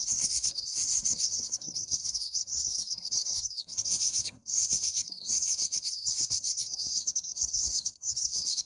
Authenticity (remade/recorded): remade